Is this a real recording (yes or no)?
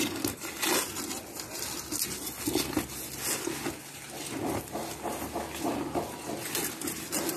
yes